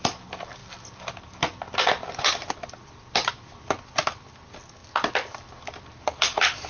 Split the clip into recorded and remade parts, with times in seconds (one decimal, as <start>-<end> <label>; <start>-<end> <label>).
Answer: 0.0-6.7 recorded